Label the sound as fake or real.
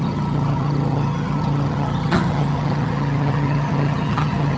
fake